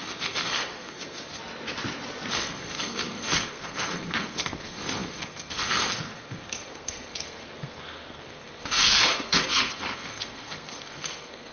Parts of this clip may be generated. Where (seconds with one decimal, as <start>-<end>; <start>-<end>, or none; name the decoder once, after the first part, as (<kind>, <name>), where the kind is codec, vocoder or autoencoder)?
0.0-1.4 (codec, SNAC); 2.3-11.5